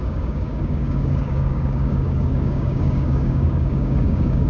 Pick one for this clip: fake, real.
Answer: fake